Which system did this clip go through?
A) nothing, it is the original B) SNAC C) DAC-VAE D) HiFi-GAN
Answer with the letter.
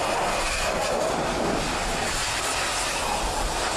A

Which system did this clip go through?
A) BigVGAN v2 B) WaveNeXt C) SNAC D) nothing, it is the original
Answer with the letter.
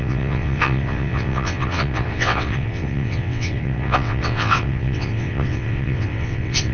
B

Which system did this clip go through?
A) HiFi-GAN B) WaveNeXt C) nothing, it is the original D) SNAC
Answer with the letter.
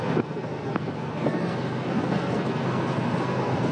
D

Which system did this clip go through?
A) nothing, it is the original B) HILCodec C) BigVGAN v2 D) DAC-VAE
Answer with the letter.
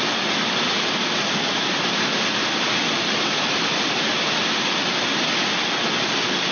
A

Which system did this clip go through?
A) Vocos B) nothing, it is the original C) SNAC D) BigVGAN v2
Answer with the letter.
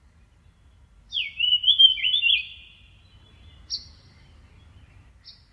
B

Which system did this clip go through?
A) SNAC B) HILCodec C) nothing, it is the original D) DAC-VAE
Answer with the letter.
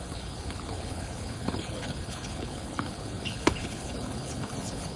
B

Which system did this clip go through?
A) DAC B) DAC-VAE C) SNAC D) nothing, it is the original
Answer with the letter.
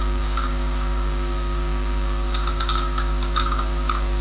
A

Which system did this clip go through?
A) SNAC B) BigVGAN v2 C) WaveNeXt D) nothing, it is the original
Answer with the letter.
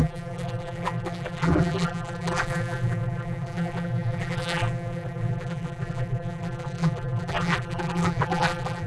B